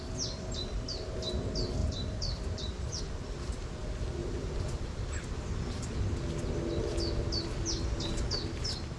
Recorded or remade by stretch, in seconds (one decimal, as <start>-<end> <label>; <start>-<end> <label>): 0.0-1.8 recorded; 1.8-3.0 remade; 3.0-4.2 recorded; 4.2-6.0 remade; 6.0-9.0 recorded